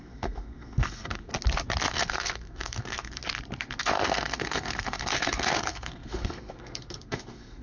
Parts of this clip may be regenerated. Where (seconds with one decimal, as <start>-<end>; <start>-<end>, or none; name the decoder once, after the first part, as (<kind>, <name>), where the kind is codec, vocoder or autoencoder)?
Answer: 0.0-1.3 (codec, SNAC); 1.9-3.2; 3.8-7.6